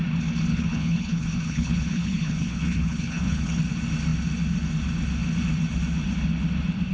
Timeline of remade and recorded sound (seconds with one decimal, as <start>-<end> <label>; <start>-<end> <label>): 0.0-0.5 recorded; 0.5-3.6 remade; 3.6-6.9 recorded

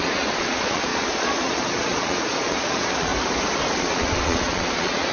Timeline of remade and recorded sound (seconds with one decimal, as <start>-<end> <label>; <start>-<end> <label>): 0.0-3.1 remade; 3.1-3.8 recorded; 3.8-5.1 remade

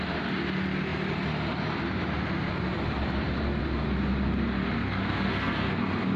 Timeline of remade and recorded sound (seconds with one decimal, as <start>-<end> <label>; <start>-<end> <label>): 0.0-5.0 recorded; 5.0-5.7 remade; 5.7-6.2 recorded

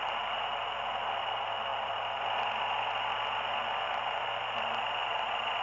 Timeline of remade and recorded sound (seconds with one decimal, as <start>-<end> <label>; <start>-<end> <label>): 0.0-5.6 recorded